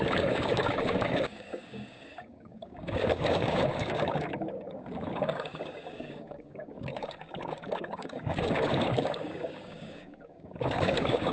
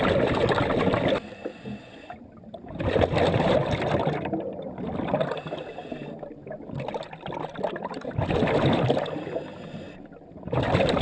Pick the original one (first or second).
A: second